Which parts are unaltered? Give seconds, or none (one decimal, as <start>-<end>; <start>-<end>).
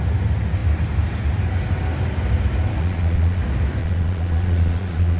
0.0-2.8; 3.4-3.8